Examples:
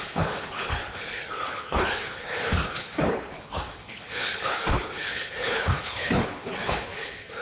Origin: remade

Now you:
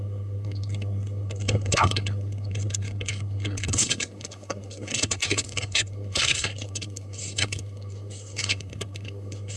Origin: remade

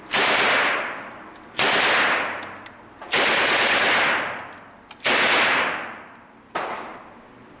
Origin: recorded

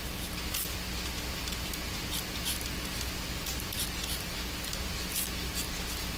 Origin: recorded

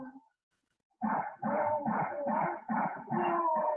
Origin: remade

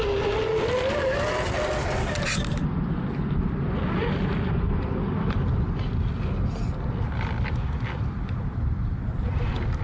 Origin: recorded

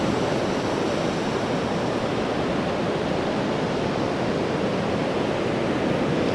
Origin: recorded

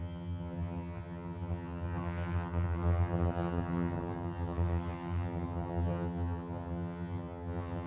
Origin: remade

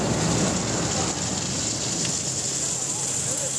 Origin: recorded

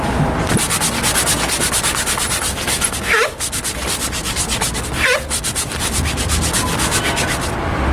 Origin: recorded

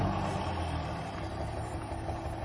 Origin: recorded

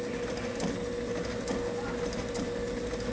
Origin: recorded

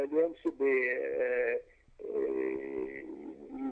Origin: recorded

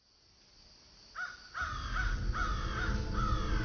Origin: recorded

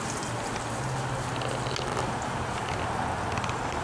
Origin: recorded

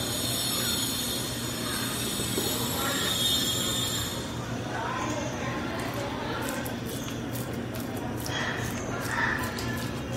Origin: recorded